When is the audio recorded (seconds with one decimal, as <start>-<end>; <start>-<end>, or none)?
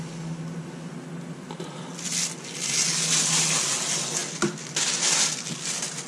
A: 0.0-6.1